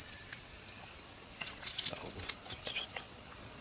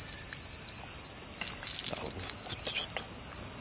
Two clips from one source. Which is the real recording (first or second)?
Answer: second